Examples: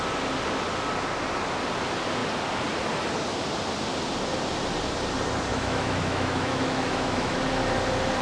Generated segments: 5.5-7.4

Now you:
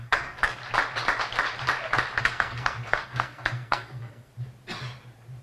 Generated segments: 0.0-0.6; 2.2-4.3

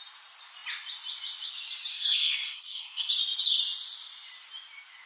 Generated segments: 1.9-3.1

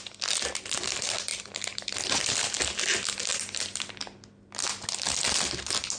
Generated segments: 1.3-2.3; 3.3-4.3